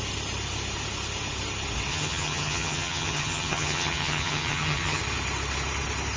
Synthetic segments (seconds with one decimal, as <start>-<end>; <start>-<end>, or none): 1.9-5.0